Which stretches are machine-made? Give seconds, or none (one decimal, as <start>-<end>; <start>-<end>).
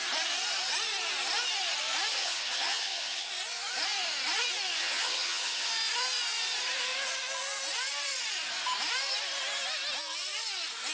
2.1-3.3; 4.8-5.7